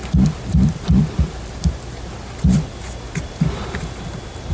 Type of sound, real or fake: real